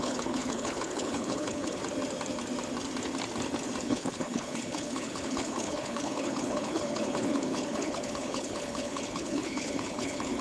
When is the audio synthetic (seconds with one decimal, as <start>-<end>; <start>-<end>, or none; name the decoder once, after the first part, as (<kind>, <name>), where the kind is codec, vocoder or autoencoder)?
0.0-1.8 (codec, HILCodec); 3.8-10.4